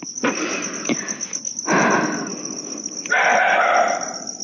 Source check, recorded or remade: recorded